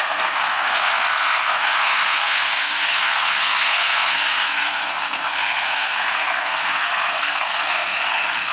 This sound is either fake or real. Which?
fake